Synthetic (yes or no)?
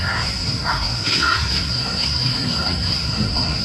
yes